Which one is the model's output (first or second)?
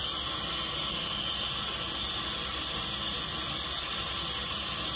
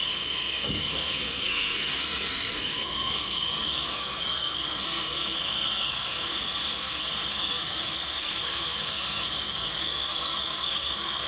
second